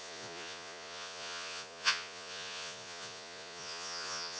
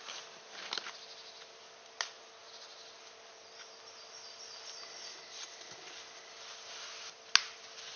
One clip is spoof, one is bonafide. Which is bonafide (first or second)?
second